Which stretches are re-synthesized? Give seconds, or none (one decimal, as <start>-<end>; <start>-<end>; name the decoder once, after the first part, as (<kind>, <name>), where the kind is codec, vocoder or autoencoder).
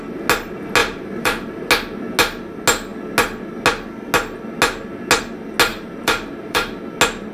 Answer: 0.8-1.7 (vocoder, BigVGAN v2); 5.7-6.8